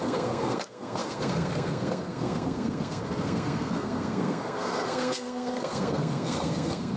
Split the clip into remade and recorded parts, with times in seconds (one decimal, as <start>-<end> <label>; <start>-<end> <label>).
0.0-7.0 remade